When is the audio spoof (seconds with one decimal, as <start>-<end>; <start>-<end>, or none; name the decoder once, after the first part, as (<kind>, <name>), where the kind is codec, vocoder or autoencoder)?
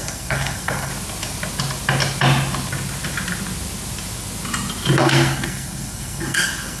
0.0-0.9 (codec, SNAC); 5.0-6.8